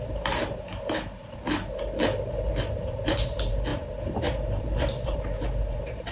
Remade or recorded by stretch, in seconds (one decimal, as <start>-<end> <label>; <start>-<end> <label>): 0.0-1.2 remade; 1.2-2.5 recorded; 2.5-6.1 remade